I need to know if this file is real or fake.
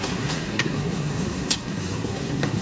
fake